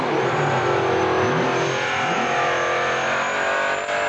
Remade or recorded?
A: recorded